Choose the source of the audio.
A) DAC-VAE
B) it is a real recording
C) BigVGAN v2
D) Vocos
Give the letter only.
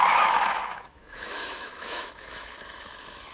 A